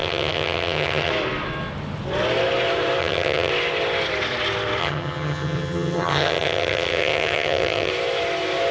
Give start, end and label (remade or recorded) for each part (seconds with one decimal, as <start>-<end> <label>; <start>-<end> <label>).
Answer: 0.0-1.1 remade; 1.1-3.0 recorded; 3.0-3.5 remade; 3.5-4.8 recorded; 4.8-7.9 remade; 7.9-8.7 recorded